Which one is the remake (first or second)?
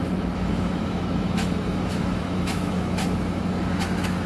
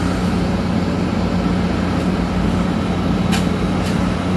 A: first